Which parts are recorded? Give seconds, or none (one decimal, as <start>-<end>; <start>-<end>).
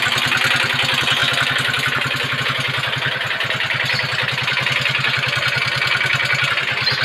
0.0-7.0